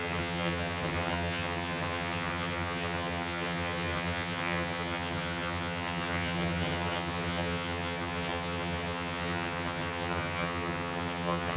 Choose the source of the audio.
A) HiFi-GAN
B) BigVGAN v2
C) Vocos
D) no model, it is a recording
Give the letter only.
A